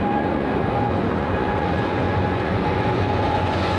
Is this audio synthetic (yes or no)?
yes